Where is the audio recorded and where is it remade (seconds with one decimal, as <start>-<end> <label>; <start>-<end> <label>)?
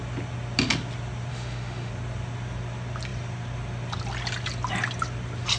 0.0-1.3 recorded; 1.3-1.9 remade; 1.9-5.6 recorded